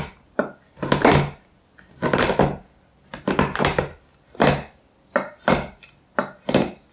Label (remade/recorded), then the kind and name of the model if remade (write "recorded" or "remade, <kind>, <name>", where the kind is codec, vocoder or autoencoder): recorded